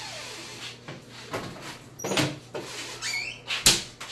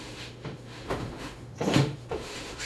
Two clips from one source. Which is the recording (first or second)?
first